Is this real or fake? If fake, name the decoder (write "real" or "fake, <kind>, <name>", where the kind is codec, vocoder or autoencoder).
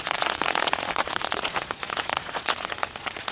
fake, vocoder, Vocos